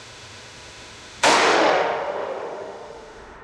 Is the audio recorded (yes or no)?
no